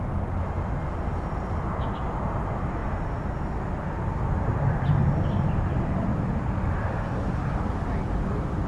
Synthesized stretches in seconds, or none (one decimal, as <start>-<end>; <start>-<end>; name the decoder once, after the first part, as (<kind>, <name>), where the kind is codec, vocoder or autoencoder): 6.1-7.6 (vocoder, BigVGAN v2)